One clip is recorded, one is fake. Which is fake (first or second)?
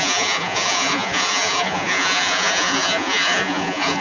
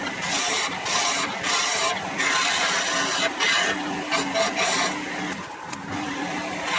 first